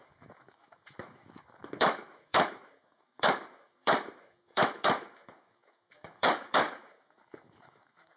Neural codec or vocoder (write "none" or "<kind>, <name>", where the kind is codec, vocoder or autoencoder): autoencoder, DAC-VAE